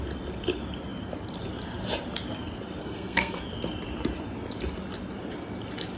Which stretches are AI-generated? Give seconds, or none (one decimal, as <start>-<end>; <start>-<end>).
2.8-3.4